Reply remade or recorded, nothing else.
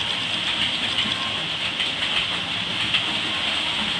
recorded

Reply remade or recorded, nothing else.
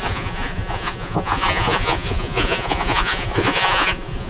remade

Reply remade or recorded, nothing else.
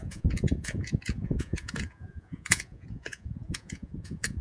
remade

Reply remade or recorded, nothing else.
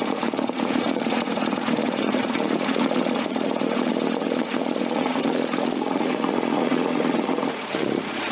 remade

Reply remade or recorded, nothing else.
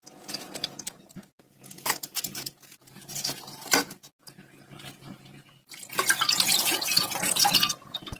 remade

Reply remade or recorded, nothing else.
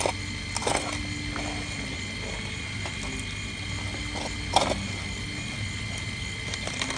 recorded